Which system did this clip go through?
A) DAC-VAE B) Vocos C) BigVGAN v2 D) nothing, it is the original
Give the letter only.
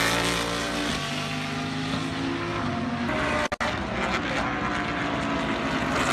D